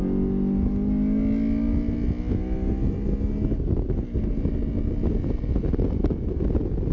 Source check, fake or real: real